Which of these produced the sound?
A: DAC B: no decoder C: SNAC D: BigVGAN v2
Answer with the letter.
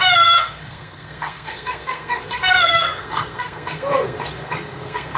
C